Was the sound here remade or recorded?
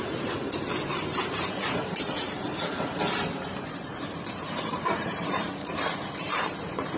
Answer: remade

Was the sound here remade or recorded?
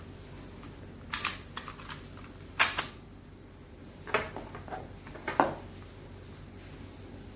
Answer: recorded